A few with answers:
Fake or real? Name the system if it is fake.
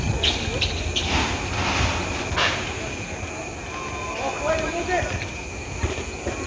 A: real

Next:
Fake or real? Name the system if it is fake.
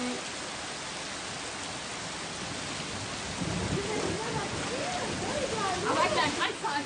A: real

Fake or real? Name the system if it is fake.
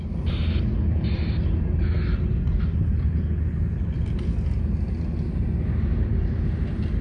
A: real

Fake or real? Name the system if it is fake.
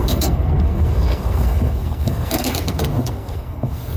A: fake, codec, SNAC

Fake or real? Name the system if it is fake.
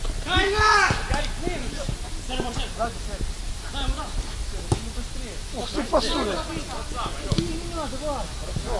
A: real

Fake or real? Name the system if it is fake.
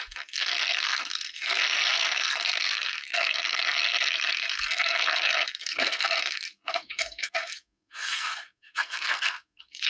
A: fake, codec, SNAC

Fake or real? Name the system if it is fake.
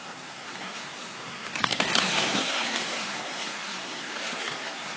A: fake, codec, SNAC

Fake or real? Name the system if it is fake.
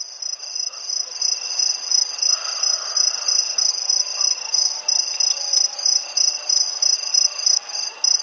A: real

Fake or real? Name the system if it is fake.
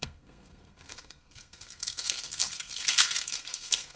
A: fake, codec, SNAC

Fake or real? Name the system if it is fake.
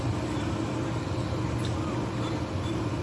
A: real